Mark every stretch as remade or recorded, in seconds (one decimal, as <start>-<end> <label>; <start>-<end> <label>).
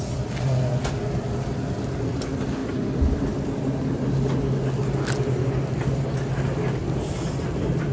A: 0.0-7.9 recorded